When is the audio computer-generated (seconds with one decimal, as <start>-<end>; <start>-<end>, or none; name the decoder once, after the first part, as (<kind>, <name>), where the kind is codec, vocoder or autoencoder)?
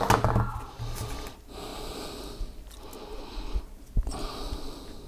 none